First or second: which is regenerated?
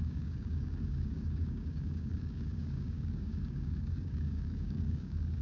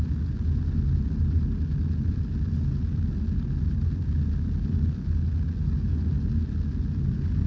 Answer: first